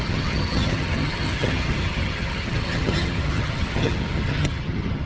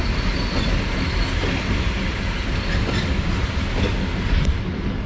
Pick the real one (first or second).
second